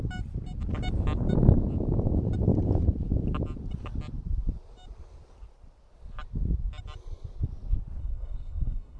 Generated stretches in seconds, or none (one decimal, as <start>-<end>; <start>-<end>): 8.0-9.0